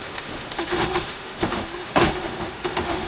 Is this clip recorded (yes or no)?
no